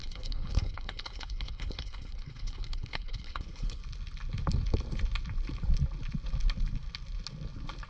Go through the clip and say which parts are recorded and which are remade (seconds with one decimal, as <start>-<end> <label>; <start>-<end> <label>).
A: 0.0-3.8 remade; 3.8-7.9 recorded

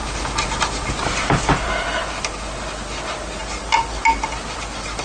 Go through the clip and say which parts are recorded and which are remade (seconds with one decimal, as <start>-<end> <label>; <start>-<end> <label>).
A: 0.0-5.0 recorded

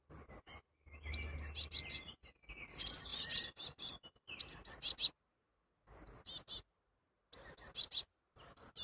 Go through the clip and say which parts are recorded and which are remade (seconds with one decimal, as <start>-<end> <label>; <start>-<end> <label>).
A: 0.0-8.8 recorded

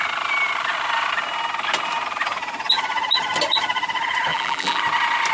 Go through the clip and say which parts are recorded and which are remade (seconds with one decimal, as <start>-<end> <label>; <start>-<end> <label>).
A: 0.0-4.3 recorded; 4.3-4.8 remade; 4.8-5.3 recorded